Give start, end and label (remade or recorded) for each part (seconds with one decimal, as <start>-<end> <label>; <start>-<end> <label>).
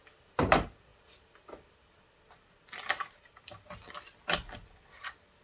0.0-5.4 recorded